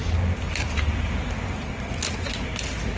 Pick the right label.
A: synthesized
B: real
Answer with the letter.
B